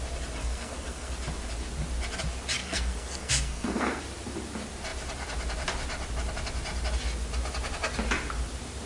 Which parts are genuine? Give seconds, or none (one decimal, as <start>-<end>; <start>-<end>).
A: 0.0-0.4; 1.1-2.6; 4.0-8.9